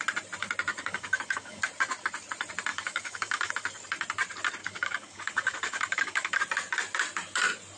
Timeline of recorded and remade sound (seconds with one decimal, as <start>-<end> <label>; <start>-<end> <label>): 0.0-0.7 recorded; 0.7-1.6 remade; 1.6-2.7 recorded; 2.7-3.5 remade; 3.5-4.6 recorded; 4.6-6.4 remade; 6.4-7.8 recorded